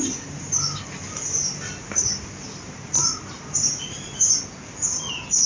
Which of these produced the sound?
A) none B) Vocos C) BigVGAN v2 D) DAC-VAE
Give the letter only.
A